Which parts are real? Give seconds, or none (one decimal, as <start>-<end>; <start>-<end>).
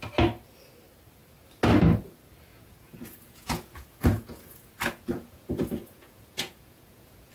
0.0-2.5